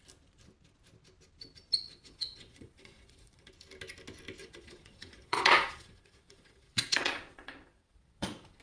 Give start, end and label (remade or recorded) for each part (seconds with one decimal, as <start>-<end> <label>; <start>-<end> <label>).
0.0-1.8 recorded; 1.8-3.5 remade; 3.5-4.4 recorded; 4.4-8.6 remade